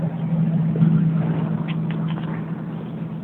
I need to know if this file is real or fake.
real